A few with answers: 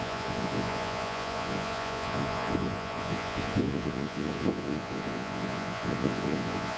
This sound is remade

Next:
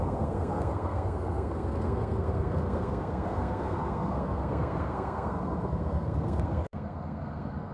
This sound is remade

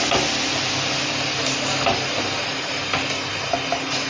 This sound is recorded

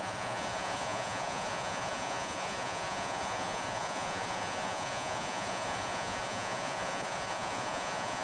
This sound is remade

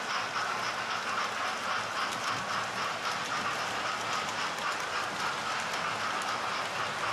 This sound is recorded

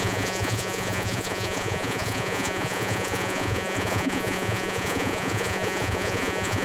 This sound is remade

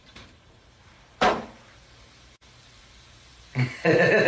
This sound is remade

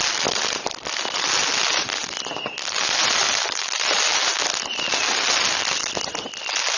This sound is recorded